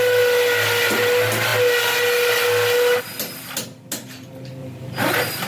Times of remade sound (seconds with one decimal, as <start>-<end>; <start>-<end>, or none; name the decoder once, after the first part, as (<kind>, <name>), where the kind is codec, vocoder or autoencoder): 4.6-5.1 (vocoder, BigVGAN v2)